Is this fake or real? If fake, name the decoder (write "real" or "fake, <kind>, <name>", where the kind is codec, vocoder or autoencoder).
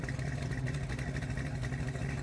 real